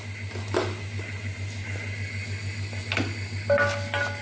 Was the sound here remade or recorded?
recorded